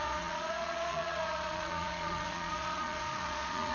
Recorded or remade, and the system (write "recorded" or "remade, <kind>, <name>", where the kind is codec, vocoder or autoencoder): remade, vocoder, Vocos